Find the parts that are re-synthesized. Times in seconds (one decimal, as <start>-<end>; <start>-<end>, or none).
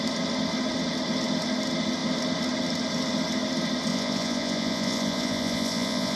3.9-6.2